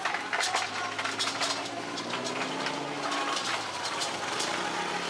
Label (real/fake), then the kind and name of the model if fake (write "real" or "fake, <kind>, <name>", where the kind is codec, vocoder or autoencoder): real